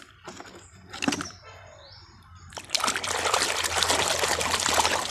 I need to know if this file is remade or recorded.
recorded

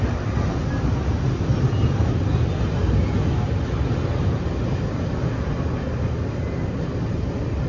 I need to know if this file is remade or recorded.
recorded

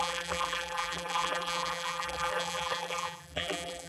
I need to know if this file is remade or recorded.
remade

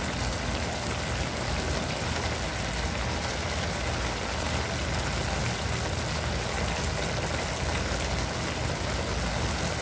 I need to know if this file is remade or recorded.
recorded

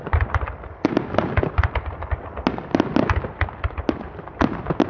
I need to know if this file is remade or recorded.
recorded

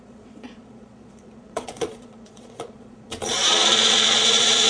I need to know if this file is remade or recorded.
remade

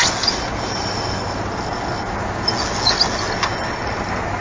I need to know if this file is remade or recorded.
recorded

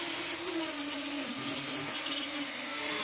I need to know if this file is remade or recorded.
recorded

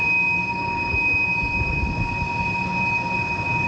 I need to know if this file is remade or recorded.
recorded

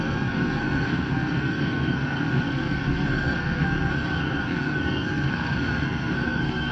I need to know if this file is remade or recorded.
remade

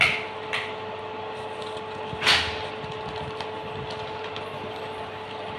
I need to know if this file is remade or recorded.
recorded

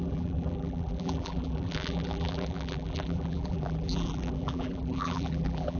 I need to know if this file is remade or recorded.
remade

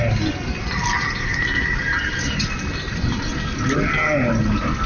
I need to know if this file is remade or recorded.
recorded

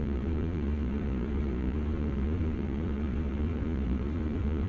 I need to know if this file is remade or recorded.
remade